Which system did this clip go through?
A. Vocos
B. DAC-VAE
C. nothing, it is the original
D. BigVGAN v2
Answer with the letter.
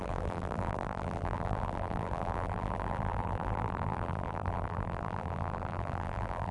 D